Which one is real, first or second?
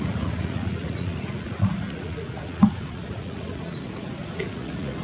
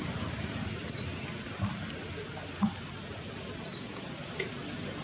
second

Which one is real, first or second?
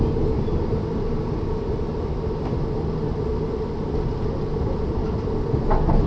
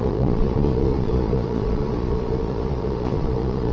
first